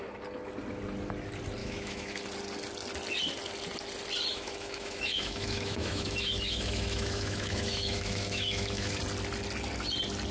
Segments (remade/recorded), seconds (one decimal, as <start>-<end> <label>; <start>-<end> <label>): 0.0-1.6 recorded; 1.6-2.2 remade; 2.2-4.3 recorded; 4.3-9.0 remade; 9.0-10.3 recorded